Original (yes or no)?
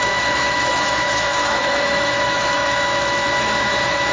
no